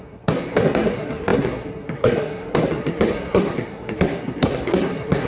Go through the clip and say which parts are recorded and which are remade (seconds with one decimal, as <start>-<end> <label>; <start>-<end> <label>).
0.0-5.3 remade